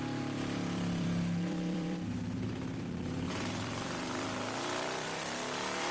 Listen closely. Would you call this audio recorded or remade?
remade